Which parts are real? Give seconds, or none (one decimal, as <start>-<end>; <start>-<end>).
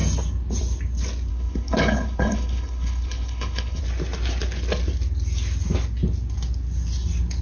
0.0-1.3; 3.8-7.4